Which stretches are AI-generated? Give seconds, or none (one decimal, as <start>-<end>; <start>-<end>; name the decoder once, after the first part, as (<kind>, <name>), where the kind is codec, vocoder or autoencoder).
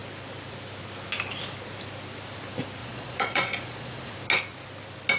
2.8-4.1 (vocoder, Vocos)